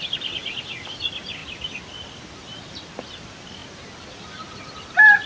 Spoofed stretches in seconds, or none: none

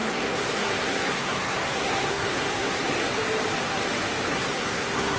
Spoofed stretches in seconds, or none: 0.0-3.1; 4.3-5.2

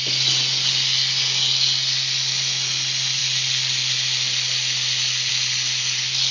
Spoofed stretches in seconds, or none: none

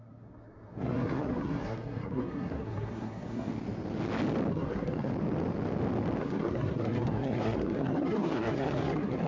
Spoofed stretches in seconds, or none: 0.0-3.5; 4.5-5.1; 6.2-9.3

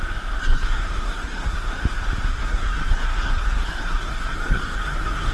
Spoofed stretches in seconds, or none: 0.4-1.8; 2.3-5.3

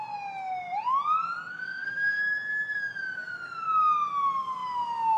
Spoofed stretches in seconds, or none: 1.5-2.2

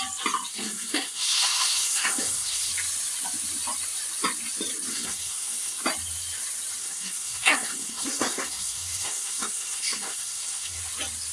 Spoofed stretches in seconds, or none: 0.5-2.7; 4.9-5.8; 6.8-10.8